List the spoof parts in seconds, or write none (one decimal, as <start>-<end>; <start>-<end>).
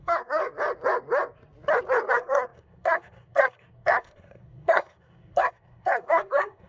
0.0-0.4; 2.1-6.7